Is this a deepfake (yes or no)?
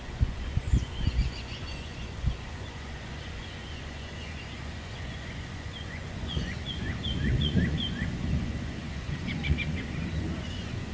yes